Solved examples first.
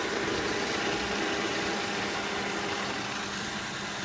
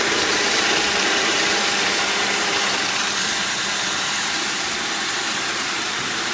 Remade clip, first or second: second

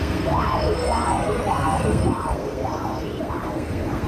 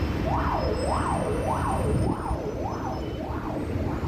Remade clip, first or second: first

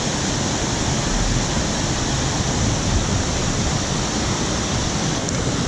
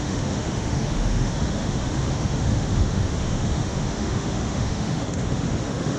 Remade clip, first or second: second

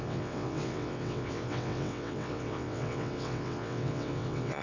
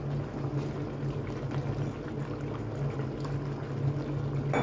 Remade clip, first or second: first